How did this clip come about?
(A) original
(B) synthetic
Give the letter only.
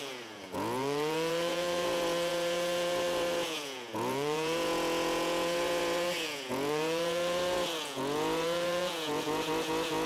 B